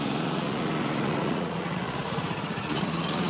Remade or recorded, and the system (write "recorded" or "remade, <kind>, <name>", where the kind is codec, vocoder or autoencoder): remade, vocoder, Vocos